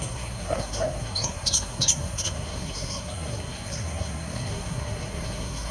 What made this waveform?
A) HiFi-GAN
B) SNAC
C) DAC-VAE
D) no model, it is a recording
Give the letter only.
B